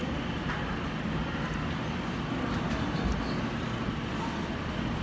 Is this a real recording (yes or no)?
yes